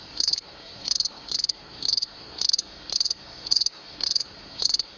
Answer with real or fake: fake